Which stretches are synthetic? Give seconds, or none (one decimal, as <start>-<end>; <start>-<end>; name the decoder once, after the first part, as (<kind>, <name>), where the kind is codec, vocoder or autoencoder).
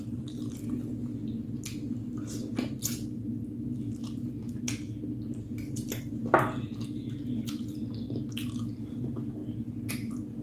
none